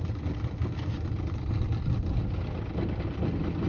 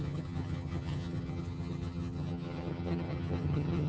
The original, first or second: first